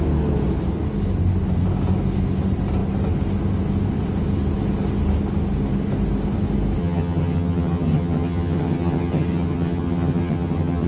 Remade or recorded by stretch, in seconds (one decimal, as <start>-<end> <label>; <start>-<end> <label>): 0.0-6.8 recorded; 6.8-10.9 remade